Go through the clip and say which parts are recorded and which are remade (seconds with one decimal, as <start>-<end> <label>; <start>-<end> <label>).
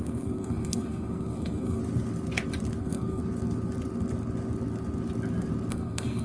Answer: 0.0-1.8 remade; 1.8-2.8 recorded; 2.8-3.2 remade; 3.2-5.7 recorded; 5.7-6.2 remade